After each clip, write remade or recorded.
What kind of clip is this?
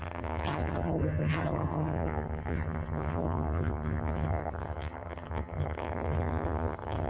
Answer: remade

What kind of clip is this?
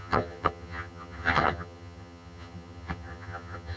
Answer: remade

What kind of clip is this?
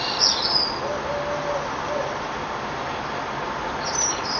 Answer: recorded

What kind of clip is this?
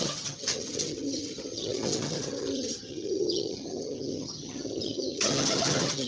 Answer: remade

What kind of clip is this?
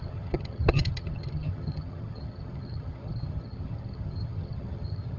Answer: remade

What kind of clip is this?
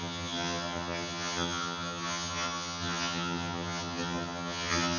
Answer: remade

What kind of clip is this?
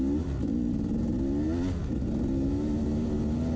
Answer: recorded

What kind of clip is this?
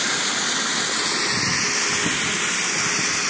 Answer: recorded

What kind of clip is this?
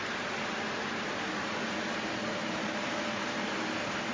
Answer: recorded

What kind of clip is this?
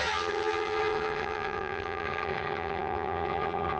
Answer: remade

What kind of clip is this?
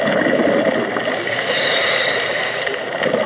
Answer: recorded